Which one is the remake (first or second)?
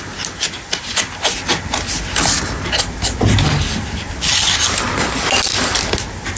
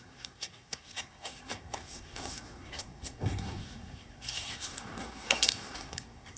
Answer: second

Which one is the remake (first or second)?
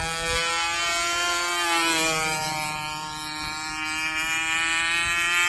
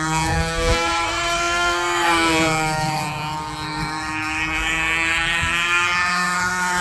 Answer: second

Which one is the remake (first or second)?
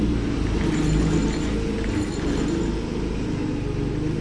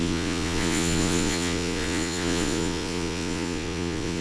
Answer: second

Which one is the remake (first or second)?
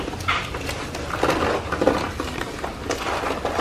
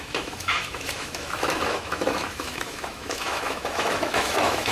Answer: second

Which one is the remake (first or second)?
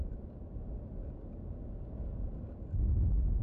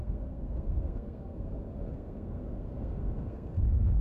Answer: second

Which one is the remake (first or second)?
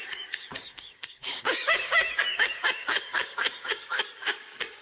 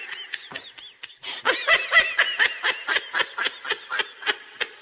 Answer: first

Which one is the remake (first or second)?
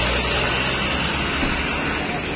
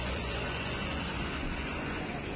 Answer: second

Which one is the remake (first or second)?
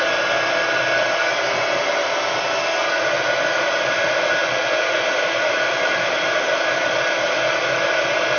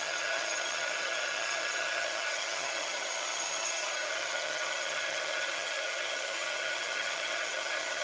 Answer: second